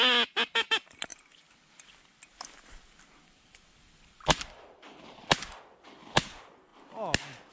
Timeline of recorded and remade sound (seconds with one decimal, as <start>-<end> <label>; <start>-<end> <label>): 0.0-1.1 recorded; 1.1-5.0 remade; 5.0-7.5 recorded